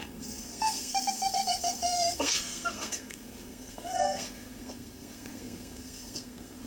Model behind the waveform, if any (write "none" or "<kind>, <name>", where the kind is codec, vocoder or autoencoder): codec, SNAC